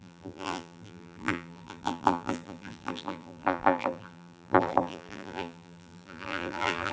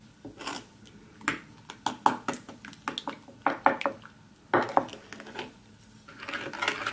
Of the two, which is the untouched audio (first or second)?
second